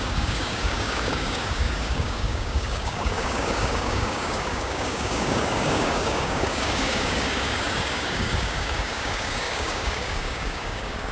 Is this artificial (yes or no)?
yes